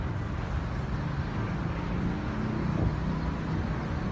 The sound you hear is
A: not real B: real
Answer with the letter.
B